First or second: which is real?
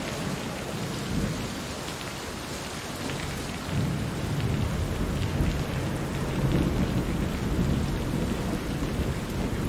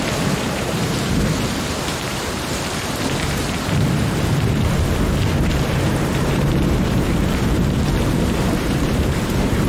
first